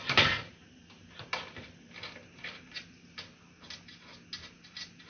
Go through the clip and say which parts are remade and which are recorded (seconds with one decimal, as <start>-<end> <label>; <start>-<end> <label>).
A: 0.0-5.1 recorded